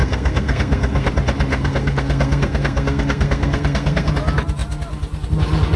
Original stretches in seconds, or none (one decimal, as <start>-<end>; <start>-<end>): 1.1-1.5; 4.1-5.8